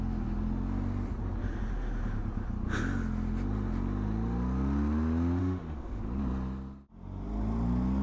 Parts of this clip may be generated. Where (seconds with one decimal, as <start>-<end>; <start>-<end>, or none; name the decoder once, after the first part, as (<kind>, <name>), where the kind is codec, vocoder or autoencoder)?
5.4-6.0 (autoencoder, DAC-VAE)